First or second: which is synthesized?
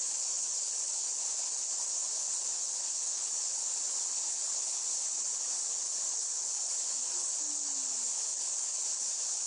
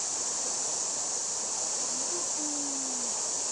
first